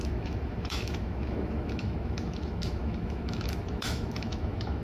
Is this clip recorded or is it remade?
remade